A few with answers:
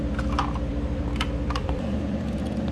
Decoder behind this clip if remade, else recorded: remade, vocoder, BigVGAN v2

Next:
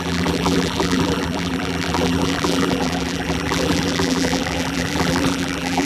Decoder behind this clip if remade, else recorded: remade, vocoder, BigVGAN v2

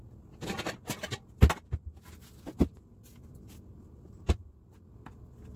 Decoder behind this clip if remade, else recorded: recorded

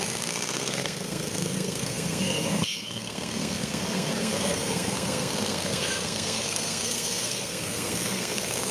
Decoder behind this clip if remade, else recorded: remade, codec, SNAC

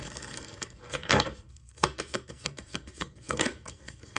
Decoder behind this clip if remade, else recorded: remade, codec, SNAC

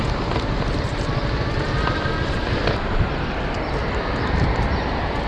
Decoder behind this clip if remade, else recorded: recorded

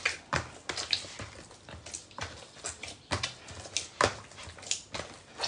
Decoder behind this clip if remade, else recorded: recorded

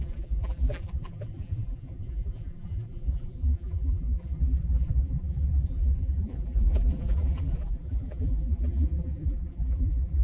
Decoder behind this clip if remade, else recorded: remade, vocoder, BigVGAN v2